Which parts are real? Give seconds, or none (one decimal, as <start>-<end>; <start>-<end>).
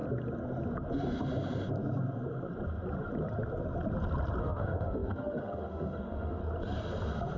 0.0-4.4; 6.4-7.4